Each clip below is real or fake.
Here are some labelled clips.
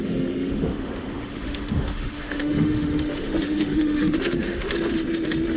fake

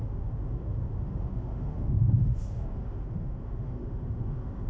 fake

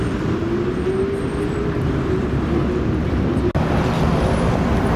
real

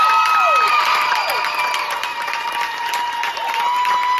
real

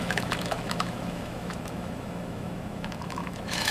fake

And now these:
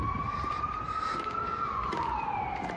real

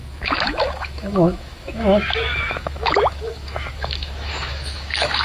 fake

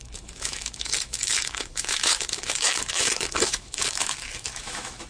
fake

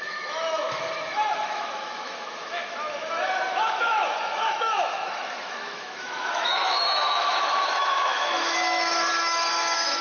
fake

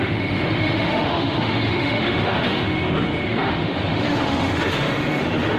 fake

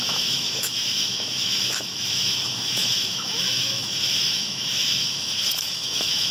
fake